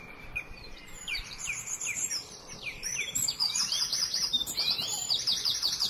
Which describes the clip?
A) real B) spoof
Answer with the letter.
B